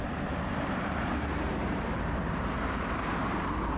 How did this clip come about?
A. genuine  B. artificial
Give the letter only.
B